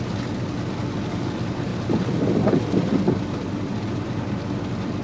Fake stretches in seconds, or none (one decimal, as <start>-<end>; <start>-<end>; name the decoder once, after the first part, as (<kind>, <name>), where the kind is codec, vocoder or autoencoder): 1.7-4.3 (vocoder, BigVGAN v2)